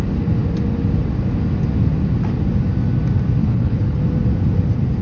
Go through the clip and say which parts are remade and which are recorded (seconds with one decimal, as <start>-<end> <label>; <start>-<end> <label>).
0.0-3.4 recorded; 3.4-4.0 remade; 4.0-5.0 recorded